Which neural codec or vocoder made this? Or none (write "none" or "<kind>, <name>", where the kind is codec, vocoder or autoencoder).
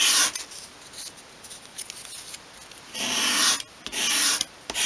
none